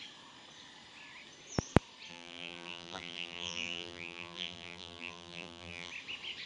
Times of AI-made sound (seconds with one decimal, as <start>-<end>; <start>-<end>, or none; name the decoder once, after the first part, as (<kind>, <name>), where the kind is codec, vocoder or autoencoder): 2.1-5.9 (vocoder, BigVGAN v2)